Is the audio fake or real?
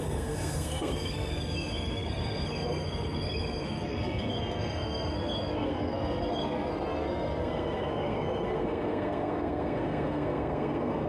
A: fake